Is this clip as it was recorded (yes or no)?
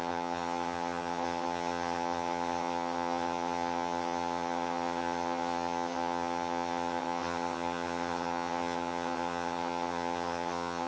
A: no